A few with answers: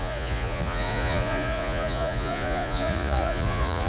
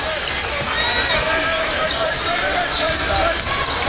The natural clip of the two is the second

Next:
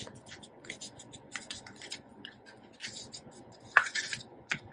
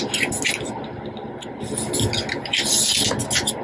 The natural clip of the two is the second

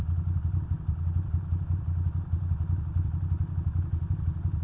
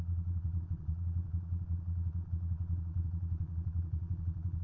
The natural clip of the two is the first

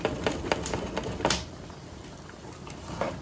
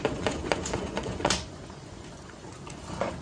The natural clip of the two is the first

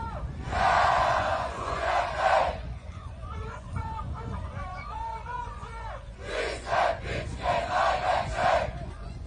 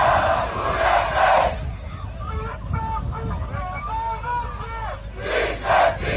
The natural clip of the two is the second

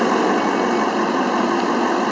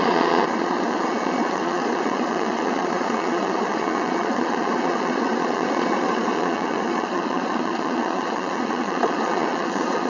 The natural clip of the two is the first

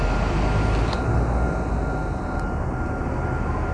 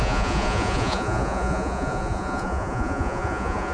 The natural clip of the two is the first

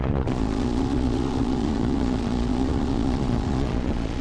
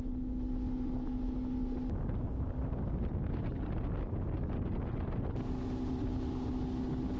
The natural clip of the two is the second